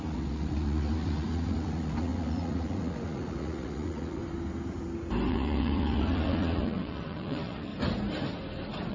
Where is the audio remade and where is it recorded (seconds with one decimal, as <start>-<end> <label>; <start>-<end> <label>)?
0.0-4.2 remade; 4.2-5.3 recorded; 5.3-7.7 remade; 7.7-8.9 recorded